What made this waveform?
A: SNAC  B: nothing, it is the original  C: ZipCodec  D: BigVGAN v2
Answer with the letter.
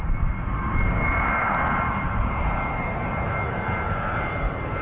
D